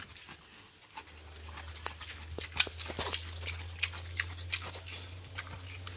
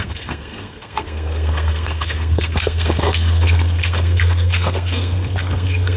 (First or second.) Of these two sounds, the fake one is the second